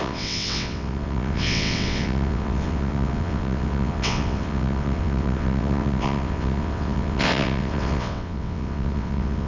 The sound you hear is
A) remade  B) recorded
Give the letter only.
A